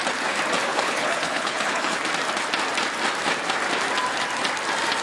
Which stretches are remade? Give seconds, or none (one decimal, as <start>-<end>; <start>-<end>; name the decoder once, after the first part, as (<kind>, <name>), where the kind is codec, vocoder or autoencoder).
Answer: 0.7-2.0 (codec, HILCodec)